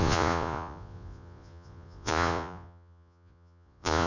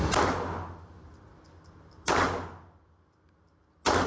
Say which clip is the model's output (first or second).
first